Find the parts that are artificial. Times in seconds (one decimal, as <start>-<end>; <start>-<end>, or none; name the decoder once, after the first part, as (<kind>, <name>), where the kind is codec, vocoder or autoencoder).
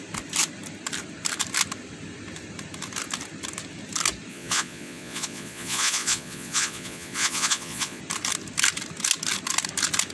4.3-8.0 (vocoder, Vocos)